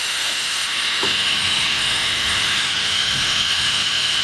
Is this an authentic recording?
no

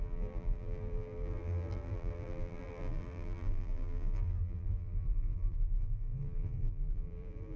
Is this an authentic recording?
no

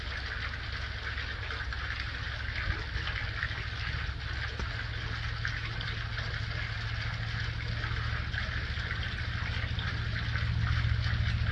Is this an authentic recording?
yes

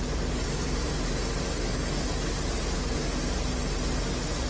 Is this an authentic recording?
yes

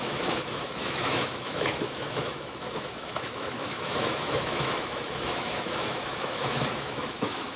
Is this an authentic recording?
no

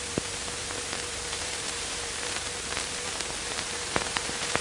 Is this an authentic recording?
no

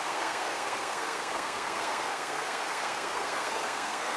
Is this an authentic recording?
no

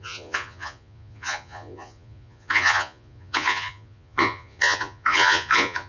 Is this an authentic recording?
no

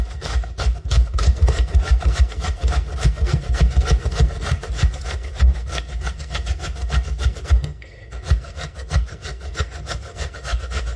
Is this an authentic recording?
no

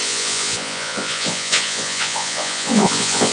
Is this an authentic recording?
no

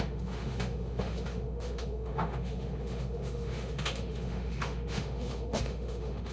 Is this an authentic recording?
no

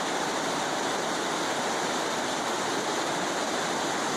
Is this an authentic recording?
yes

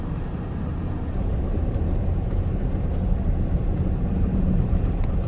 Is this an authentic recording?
no